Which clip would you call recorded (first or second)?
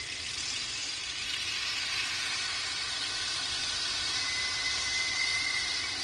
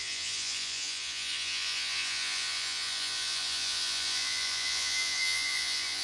first